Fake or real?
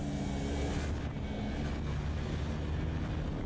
real